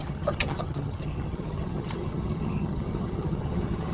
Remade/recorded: remade